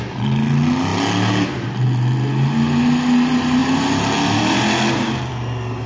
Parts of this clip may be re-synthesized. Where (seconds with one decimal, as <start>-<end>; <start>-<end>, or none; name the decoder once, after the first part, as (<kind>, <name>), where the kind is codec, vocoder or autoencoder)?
none